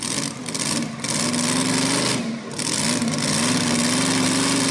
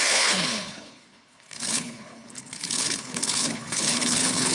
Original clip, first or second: first